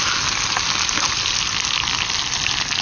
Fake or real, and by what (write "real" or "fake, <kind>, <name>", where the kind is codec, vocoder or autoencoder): real